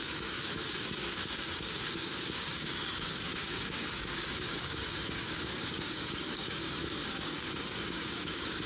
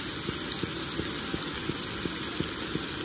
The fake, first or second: first